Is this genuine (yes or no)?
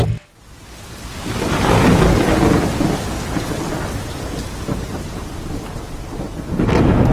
yes